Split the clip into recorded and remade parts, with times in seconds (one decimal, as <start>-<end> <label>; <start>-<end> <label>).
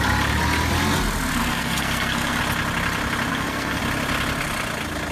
0.0-1.4 recorded; 1.4-2.4 remade; 2.4-3.3 recorded; 3.3-3.8 remade; 3.8-5.1 recorded